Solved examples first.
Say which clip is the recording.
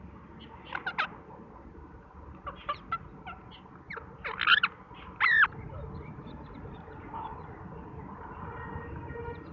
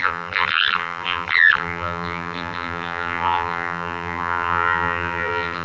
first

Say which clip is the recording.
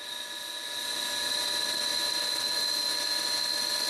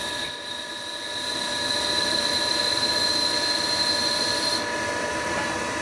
first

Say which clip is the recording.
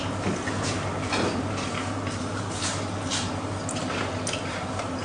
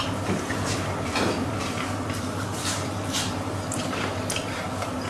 first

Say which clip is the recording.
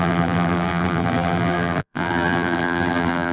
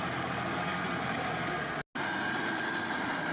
second